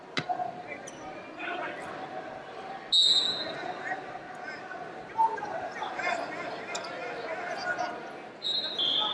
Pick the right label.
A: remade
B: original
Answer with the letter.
B